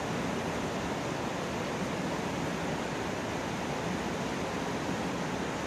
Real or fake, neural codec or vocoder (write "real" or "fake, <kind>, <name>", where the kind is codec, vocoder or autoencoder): real